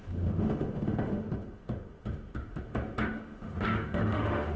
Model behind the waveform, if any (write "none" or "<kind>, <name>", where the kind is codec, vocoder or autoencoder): autoencoder, DAC-VAE